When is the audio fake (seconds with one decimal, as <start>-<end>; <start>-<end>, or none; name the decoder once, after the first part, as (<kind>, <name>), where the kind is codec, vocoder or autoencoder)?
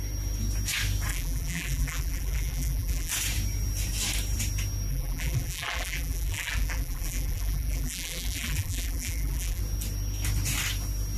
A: 1.1-3.1 (vocoder, BigVGAN v2); 4.9-9.6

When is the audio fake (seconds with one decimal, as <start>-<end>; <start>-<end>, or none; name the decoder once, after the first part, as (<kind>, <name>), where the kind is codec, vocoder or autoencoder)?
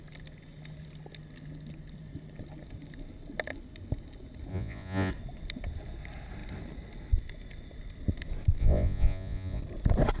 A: 4.5-5.1 (vocoder, Vocos); 8.6-9.6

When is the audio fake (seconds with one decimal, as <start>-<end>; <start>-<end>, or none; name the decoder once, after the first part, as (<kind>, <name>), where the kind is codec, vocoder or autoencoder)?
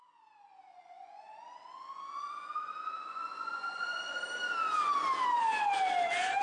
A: 0.7-4.2 (vocoder, Vocos)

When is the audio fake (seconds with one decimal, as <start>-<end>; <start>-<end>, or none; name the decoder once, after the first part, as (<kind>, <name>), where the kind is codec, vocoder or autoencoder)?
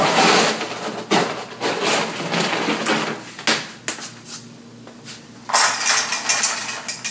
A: none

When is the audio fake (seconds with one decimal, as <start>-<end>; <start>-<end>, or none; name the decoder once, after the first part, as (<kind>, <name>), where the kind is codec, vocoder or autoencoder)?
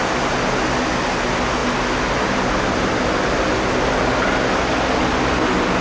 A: none